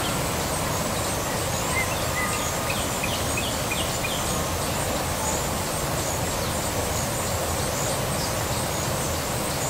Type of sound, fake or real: real